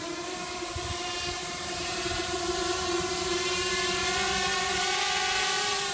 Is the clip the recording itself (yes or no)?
no